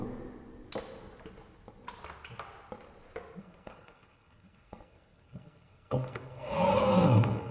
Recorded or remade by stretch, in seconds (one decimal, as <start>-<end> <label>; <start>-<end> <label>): 0.0-3.4 recorded; 3.4-7.5 remade